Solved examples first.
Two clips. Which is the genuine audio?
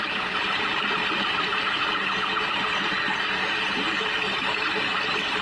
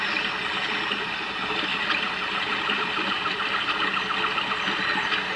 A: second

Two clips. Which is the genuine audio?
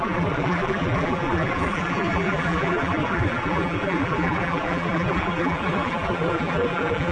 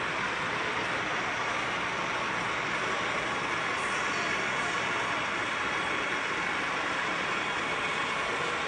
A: second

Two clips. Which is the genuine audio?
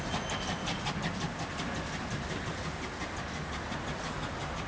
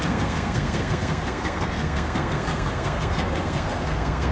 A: first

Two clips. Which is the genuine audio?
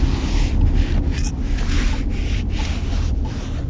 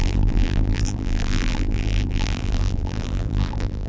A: first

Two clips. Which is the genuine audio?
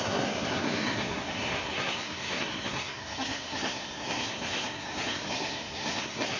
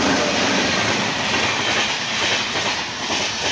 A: second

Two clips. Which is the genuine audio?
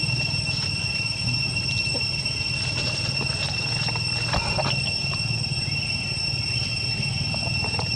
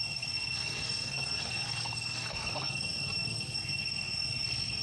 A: first